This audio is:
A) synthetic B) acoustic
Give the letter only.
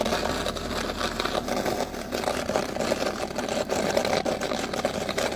B